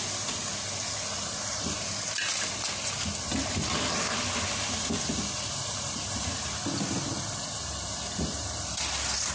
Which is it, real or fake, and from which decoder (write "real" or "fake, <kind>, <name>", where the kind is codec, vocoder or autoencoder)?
real